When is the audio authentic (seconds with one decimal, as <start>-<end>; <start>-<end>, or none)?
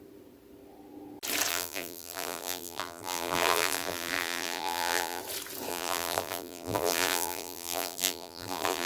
0.0-1.5; 5.2-5.7